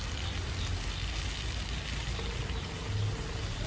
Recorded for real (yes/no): yes